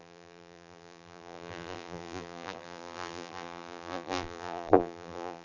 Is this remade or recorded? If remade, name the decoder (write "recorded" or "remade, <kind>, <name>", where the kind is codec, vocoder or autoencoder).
remade, vocoder, BigVGAN v2